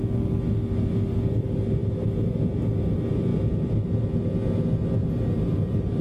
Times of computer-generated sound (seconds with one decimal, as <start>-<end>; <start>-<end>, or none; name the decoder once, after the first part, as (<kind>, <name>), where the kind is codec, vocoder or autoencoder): 5.0-6.0 (vocoder, BigVGAN v2)